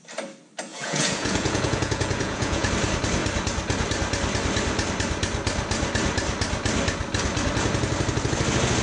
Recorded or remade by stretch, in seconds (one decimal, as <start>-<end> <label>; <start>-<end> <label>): 0.0-0.7 recorded; 0.7-2.7 remade; 2.7-8.8 recorded